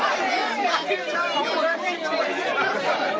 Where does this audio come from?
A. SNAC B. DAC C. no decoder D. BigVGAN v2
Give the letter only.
D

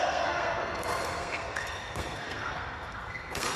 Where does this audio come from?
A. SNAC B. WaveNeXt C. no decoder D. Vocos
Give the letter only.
A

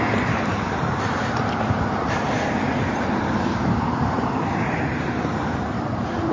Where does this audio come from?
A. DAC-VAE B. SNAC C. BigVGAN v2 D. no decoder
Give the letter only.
C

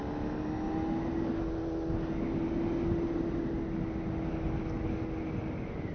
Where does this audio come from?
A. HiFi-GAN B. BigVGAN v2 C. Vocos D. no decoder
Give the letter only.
D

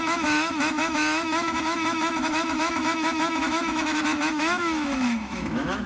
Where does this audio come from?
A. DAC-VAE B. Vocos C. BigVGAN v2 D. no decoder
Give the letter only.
A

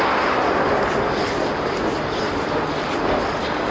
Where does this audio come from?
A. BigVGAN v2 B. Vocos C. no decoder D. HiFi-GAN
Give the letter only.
C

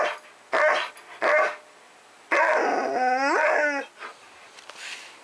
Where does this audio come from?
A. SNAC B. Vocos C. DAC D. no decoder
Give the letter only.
D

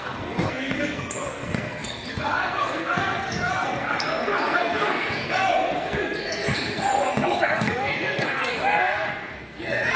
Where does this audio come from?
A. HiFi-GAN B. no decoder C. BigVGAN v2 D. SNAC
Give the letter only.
D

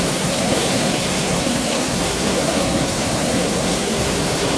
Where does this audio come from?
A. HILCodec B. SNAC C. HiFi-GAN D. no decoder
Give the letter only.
B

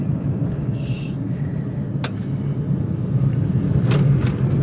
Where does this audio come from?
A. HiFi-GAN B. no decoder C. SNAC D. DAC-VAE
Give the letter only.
B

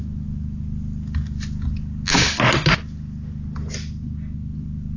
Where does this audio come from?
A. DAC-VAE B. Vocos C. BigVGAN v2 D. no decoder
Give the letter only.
D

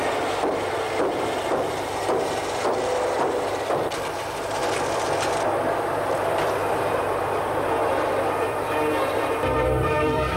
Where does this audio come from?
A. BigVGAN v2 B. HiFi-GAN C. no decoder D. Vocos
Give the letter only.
A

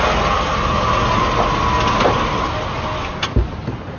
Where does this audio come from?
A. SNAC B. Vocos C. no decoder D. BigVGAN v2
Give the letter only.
C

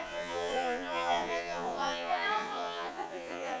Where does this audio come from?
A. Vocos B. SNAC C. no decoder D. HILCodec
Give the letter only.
A